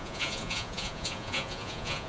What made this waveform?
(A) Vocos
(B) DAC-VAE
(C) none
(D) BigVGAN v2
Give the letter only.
A